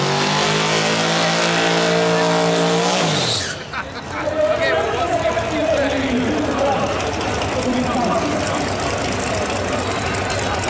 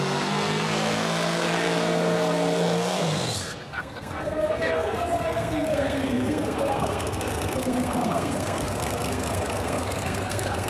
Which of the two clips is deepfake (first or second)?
second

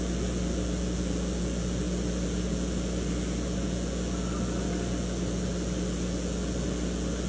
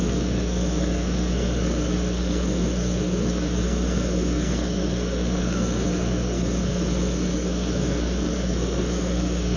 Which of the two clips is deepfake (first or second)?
second